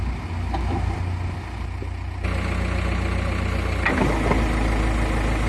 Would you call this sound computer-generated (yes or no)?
no